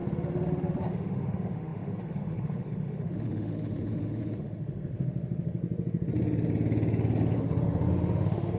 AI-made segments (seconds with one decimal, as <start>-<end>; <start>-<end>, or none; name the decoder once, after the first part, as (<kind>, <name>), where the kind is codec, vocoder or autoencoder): 0.9-5.6 (autoencoder, DAC-VAE); 7.6-8.6